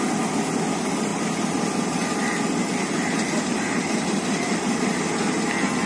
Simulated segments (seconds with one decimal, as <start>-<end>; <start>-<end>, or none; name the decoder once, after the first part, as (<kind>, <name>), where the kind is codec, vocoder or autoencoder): none